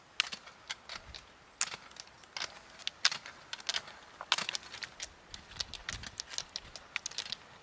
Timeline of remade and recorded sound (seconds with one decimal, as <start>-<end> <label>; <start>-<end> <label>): 0.0-7.6 recorded